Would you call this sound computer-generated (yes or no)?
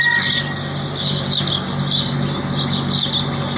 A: no